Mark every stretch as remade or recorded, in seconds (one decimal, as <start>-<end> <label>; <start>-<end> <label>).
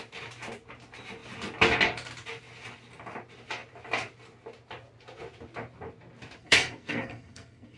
0.0-6.4 recorded; 6.4-7.8 remade